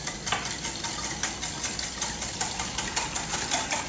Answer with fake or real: real